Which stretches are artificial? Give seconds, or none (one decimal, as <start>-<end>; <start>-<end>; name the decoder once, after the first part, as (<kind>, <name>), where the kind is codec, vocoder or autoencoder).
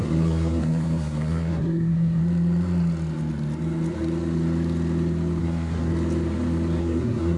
0.0-2.2 (codec, SNAC); 5.4-5.9; 6.8-7.4